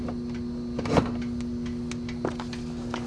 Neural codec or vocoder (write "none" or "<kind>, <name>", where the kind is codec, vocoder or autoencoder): none